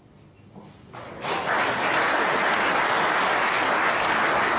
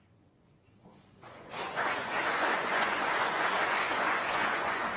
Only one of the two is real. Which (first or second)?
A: first